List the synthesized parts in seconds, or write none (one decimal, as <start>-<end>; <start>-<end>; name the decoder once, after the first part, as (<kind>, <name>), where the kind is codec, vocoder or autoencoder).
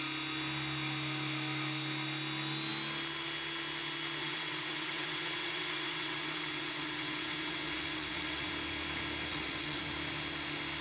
4.2-8.5 (vocoder, WaveNeXt); 9.3-9.8